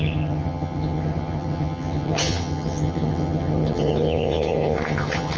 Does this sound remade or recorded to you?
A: remade